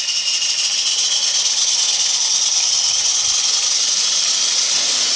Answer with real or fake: real